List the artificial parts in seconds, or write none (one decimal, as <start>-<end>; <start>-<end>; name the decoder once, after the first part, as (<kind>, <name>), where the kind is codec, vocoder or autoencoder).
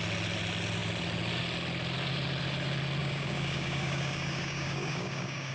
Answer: 3.0-5.5 (codec, DAC)